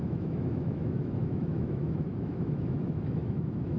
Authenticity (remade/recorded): remade